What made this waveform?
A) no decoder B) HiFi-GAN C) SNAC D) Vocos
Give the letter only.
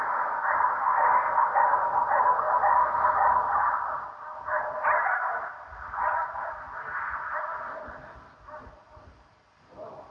A